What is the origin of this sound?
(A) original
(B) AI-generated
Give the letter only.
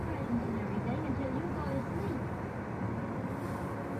A